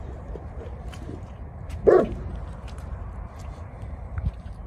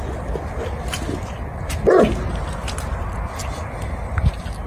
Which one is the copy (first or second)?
first